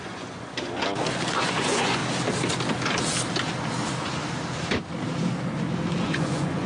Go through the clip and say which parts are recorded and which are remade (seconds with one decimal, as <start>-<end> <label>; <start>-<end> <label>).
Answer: 0.0-0.8 remade; 0.8-1.4 recorded; 1.4-2.0 remade; 2.0-6.0 recorded; 6.0-6.7 remade